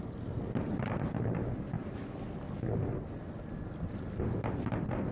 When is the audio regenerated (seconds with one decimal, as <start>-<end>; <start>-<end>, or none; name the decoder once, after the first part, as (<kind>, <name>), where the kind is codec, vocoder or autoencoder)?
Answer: none